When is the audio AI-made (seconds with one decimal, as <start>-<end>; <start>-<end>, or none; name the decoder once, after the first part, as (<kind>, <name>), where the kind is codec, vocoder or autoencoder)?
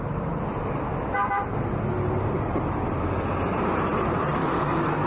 4.4-5.1 (autoencoder, DAC-VAE)